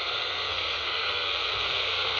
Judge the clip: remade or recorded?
remade